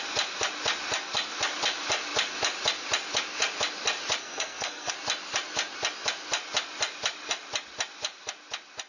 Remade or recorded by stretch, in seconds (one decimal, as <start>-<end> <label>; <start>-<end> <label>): 0.0-4.2 recorded; 4.2-4.9 remade; 4.9-8.9 recorded